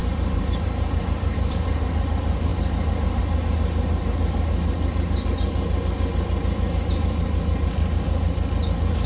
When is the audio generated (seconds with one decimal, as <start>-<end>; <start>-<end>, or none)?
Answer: 0.0-1.9